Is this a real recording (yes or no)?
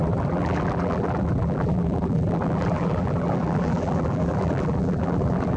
no